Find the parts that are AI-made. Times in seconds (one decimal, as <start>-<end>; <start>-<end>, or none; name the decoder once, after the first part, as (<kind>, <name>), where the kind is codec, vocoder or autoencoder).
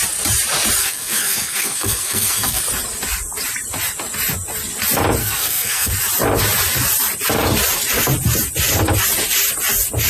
0.8-2.6 (codec, SNAC); 5.2-5.9